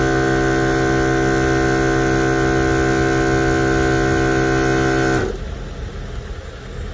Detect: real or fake real